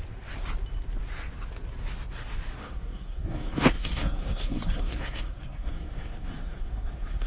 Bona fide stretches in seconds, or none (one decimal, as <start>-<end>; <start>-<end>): 0.0-2.6